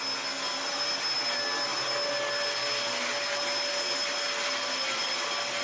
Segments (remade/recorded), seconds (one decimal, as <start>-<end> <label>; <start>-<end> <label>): 0.0-5.6 recorded